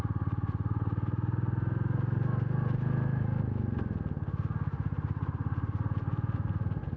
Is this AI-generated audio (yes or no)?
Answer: no